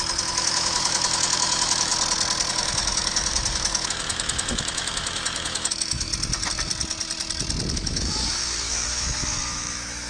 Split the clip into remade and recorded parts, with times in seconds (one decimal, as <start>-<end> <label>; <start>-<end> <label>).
0.0-1.9 remade; 1.9-2.5 recorded; 2.5-6.1 remade; 6.1-7.7 recorded; 7.7-10.1 remade